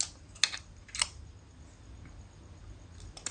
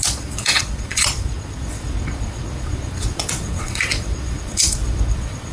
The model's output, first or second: second